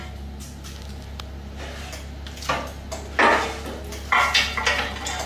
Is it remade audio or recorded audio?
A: recorded